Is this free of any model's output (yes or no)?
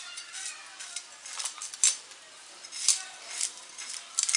yes